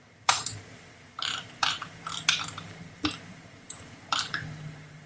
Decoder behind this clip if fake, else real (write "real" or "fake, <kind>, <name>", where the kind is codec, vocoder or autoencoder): fake, vocoder, BigVGAN v2